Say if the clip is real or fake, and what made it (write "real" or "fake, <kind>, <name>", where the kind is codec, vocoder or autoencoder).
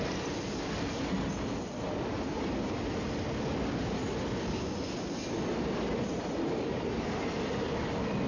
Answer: real